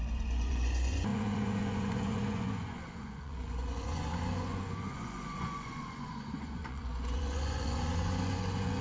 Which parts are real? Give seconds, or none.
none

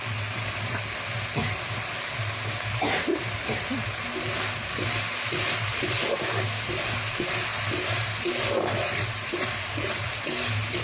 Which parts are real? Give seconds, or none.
0.0-10.8

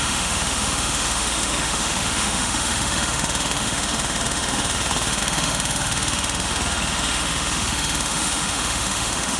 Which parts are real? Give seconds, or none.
none

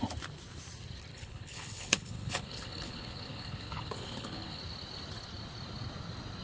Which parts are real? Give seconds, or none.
0.0-1.1; 4.6-6.4

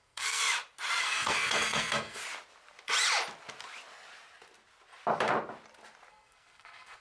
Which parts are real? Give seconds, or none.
0.4-1.0; 2.2-6.1